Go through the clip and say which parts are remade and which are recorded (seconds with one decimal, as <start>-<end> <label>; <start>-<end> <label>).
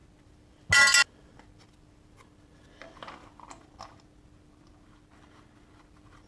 0.0-6.3 recorded